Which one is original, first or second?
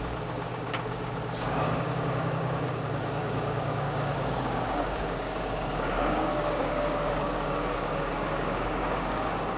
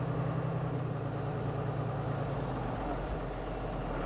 second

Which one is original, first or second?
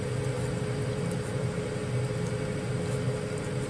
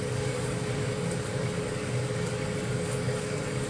first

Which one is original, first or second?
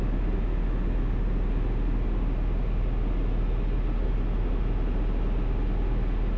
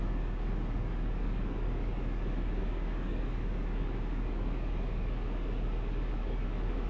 first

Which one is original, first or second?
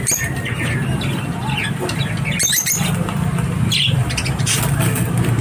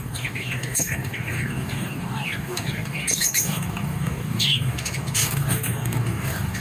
first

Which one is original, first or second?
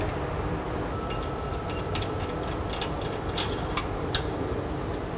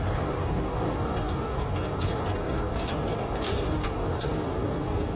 first